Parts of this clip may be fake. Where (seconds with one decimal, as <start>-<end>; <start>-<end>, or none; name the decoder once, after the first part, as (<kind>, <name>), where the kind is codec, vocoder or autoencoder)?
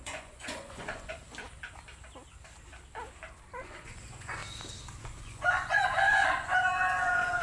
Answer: 0.0-1.2 (vocoder, Vocos); 3.6-4.4; 5.0-7.4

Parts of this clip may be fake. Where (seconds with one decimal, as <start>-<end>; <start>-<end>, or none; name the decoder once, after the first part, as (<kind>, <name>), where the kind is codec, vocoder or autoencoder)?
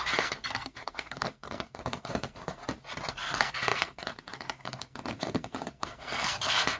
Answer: 0.0-2.6 (codec, SNAC); 3.1-6.8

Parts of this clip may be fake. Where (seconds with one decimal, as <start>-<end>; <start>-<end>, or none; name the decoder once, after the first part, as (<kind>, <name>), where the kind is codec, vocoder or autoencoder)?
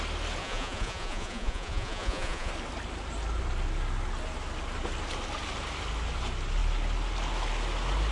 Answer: 0.4-2.5 (vocoder, Vocos)